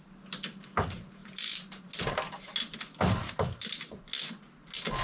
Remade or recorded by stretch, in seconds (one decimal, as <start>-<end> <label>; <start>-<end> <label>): 0.0-1.2 recorded; 1.2-1.9 remade; 1.9-5.0 recorded